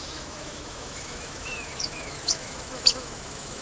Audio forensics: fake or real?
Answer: fake